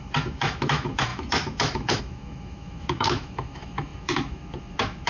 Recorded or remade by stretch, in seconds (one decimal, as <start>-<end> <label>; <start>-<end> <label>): 0.0-5.1 remade

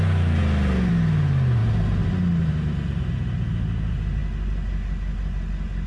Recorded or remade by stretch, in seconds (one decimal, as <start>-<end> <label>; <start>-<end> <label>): 0.0-5.9 recorded

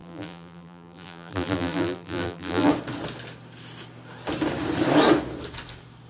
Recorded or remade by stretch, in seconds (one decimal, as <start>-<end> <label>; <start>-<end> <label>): 0.0-2.7 remade; 2.7-6.1 recorded

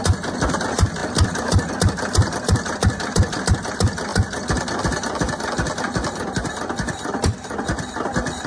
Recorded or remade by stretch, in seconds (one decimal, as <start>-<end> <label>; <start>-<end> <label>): 0.0-2.8 recorded; 2.8-3.4 remade; 3.4-8.5 recorded